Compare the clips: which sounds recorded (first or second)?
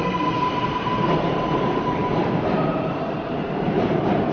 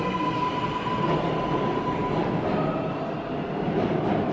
second